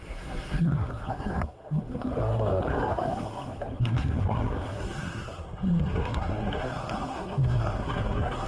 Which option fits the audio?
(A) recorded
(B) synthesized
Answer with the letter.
B